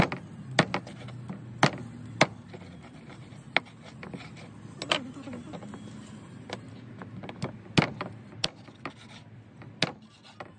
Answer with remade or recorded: recorded